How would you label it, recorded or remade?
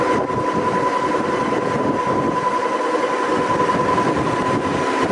recorded